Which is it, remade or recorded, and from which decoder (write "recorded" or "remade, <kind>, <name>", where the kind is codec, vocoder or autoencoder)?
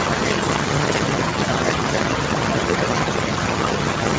remade, vocoder, HiFi-GAN